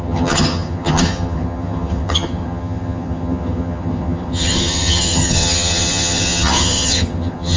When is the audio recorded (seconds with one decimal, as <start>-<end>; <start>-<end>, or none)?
none